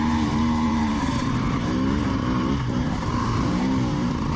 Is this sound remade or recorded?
remade